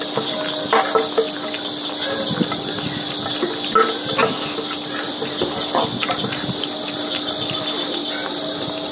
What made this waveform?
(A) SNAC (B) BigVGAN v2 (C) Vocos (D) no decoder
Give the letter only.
D